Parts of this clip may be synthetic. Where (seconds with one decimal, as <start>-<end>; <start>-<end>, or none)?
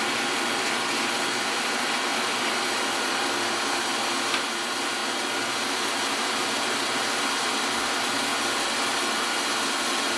none